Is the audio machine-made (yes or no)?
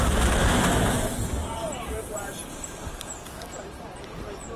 no